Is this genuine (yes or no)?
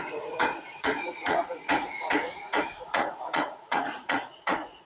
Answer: no